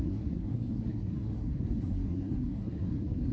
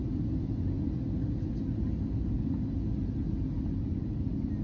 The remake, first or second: first